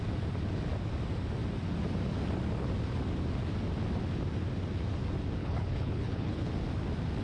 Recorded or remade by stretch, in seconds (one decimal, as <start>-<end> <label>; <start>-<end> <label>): 0.0-5.4 recorded; 5.4-6.5 remade; 6.5-7.2 recorded